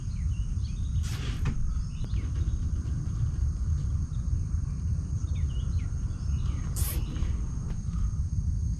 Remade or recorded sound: recorded